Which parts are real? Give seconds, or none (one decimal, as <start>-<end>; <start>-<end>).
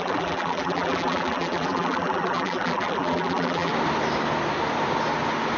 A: 3.7-5.6